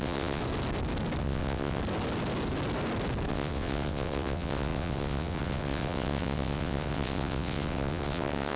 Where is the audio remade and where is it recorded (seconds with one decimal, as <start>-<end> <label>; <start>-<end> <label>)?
0.0-0.4 remade; 0.4-1.2 recorded; 1.2-1.8 remade; 1.8-3.3 recorded; 3.3-8.6 remade